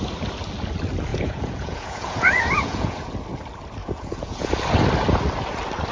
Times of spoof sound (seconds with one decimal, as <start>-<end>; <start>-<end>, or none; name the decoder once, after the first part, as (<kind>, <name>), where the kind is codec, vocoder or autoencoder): 1.1-3.1 (vocoder, Vocos); 3.8-4.5